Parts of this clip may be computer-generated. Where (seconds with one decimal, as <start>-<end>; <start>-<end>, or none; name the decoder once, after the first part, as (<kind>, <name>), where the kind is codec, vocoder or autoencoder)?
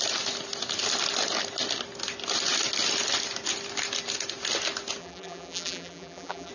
5.0-6.5 (vocoder, BigVGAN v2)